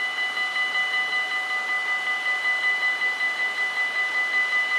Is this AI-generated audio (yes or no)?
no